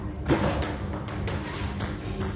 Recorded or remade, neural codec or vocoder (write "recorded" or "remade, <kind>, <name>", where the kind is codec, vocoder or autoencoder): recorded